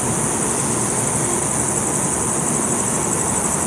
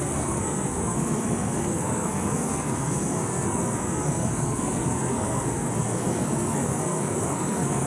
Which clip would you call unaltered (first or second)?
first